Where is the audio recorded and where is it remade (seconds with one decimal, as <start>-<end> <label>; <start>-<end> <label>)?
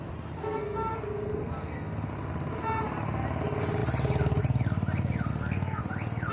0.0-0.4 recorded; 0.4-2.1 remade; 2.1-5.3 recorded; 5.3-5.8 remade; 5.8-6.3 recorded